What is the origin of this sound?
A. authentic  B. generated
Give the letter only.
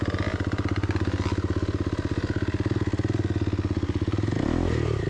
A